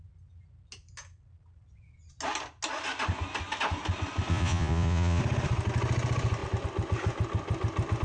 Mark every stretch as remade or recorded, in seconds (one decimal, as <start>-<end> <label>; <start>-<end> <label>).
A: 0.0-4.3 recorded; 4.3-5.2 remade; 5.2-8.0 recorded